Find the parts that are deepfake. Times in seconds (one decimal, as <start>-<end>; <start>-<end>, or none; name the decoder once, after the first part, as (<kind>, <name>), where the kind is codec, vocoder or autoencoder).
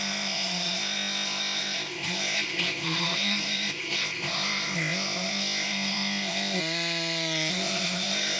0.0-6.6 (codec, ZipCodec); 7.5-8.4